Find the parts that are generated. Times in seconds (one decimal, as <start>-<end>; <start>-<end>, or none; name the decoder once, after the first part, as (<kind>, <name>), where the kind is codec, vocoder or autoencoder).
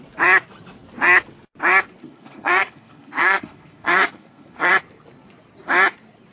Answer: 2.0-4.7 (codec, SNAC)